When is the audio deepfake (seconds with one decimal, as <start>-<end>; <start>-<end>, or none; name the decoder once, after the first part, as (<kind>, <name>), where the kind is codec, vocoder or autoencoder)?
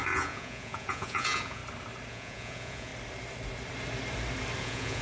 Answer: 0.0-1.6 (vocoder, Vocos); 2.1-2.9; 4.6-5.0